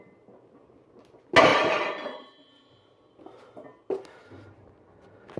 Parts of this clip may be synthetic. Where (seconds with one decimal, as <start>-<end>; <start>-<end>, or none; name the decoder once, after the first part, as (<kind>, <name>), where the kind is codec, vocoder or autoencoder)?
1.5-3.1 (vocoder, BigVGAN v2)